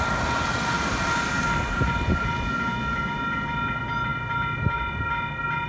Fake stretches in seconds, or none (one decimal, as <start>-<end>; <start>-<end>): none